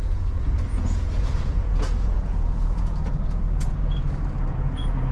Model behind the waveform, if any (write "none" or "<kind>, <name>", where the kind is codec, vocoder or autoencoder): vocoder, Vocos